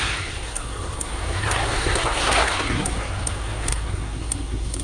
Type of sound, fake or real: fake